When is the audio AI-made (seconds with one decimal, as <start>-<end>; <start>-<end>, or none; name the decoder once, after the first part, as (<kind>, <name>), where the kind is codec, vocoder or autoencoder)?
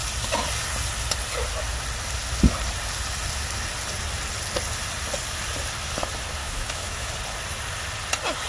6.4-7.1 (autoencoder, DAC-VAE)